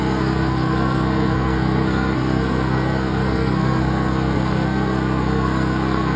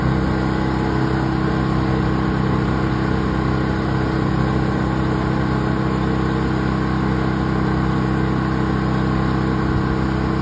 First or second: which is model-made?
first